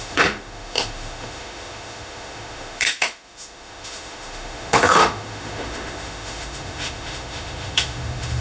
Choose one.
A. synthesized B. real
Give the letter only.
A